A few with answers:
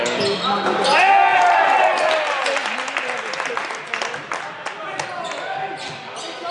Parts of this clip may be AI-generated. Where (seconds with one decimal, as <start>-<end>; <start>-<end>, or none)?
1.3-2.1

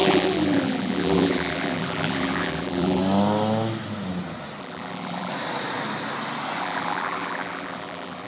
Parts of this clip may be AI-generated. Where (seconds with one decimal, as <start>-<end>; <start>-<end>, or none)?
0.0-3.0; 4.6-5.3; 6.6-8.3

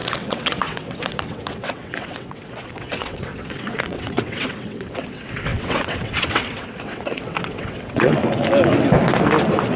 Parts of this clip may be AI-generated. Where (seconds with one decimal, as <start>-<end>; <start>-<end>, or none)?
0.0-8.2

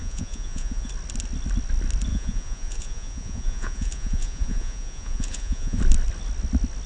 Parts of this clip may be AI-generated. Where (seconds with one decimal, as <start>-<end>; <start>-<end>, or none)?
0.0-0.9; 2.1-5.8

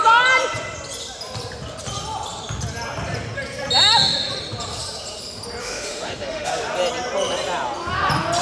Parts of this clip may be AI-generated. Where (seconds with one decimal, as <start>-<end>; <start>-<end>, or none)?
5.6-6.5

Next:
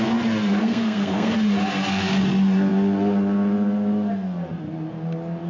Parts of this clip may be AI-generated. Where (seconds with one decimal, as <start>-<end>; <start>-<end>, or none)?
0.6-1.3

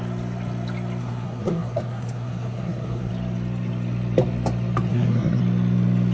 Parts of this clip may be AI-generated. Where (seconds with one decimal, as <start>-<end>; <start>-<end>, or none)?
1.0-3.1; 4.9-5.4